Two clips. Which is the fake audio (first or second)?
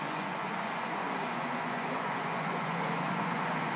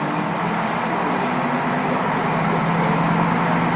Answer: first